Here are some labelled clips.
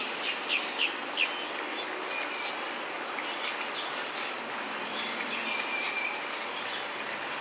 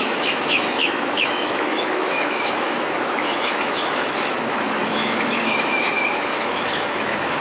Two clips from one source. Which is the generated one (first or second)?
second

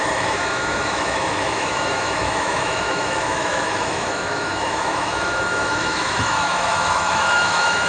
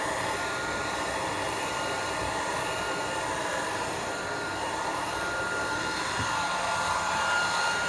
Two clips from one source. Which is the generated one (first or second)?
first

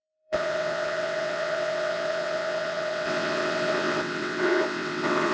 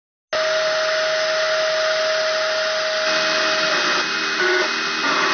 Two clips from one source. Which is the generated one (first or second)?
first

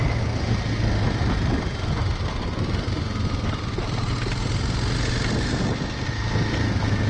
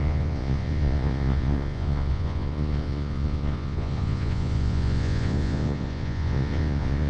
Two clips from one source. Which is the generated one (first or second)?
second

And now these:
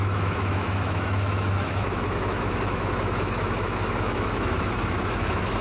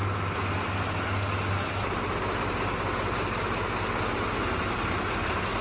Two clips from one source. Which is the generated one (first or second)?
first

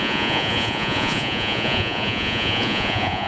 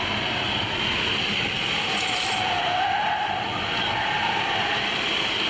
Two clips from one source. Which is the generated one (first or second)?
first